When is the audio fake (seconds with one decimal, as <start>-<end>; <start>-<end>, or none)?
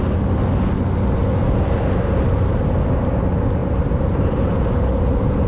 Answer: 3.6-5.5